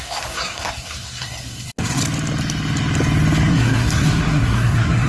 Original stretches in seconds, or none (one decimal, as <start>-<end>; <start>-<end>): 2.0-3.5